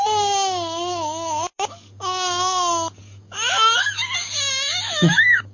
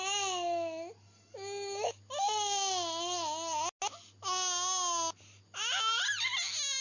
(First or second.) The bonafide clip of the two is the second